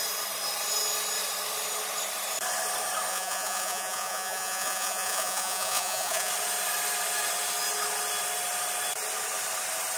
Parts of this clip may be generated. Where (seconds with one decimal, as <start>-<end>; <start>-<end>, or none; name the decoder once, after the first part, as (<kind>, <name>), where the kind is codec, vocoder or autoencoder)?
3.1-6.3 (vocoder, Vocos)